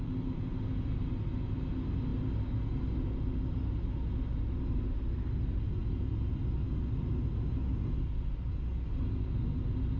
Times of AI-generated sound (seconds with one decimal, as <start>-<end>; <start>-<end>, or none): none